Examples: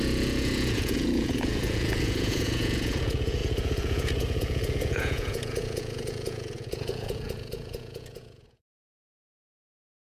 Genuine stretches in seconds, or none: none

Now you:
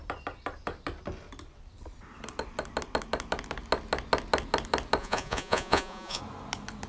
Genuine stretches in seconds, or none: 0.0-5.0; 6.2-6.9

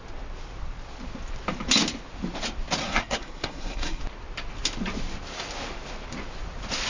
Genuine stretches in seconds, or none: 0.0-2.8; 4.0-6.9

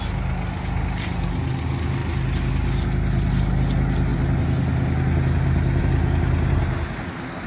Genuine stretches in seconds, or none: 0.0-7.5

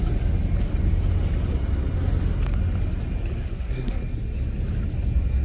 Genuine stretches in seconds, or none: 0.0-3.5; 4.0-5.4

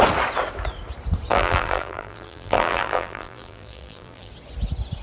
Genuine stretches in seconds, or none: 0.0-1.3; 4.3-5.0